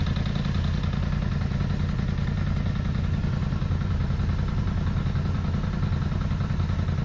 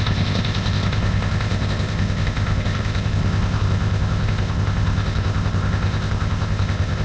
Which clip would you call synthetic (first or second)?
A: second